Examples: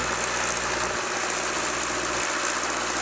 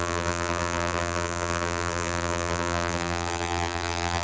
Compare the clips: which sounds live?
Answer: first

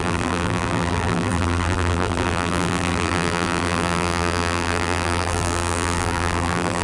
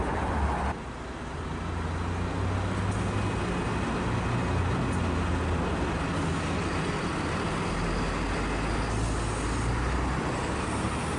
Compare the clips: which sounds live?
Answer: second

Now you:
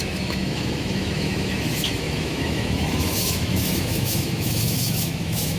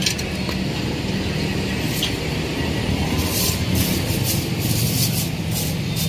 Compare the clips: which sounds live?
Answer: second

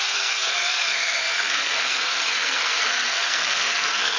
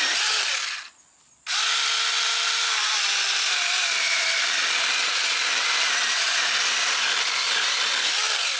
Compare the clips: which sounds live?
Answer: second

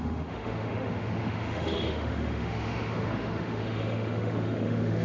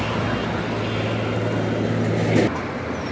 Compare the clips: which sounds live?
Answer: second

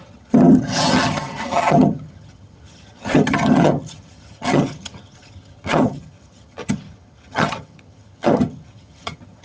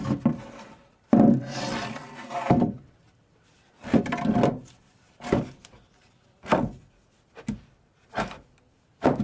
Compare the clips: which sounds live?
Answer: second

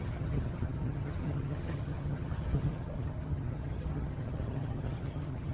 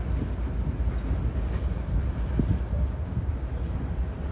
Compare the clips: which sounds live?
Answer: second